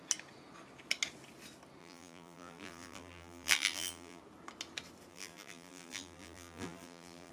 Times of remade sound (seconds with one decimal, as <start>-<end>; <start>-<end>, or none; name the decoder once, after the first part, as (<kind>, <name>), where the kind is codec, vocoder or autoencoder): 1.8-4.2 (vocoder, BigVGAN v2); 5.1-7.3